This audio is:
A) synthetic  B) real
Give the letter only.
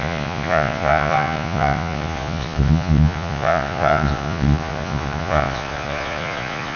A